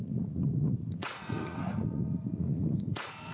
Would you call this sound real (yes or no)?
no